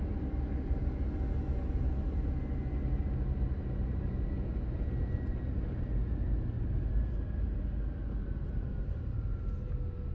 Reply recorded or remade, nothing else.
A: recorded